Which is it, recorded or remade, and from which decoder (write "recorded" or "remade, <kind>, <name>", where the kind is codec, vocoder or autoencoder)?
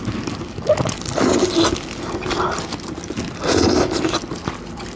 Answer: recorded